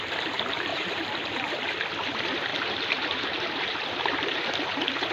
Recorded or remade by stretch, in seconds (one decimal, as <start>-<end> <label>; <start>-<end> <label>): 0.0-0.7 recorded; 0.7-1.3 remade; 1.3-2.5 recorded; 2.5-5.1 remade

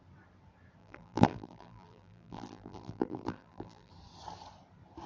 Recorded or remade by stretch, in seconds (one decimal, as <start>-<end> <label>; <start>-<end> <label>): 0.0-0.8 recorded; 0.8-3.9 remade; 3.9-5.1 recorded

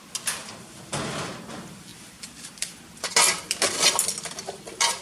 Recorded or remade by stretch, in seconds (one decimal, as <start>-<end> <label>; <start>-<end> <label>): 0.0-5.0 recorded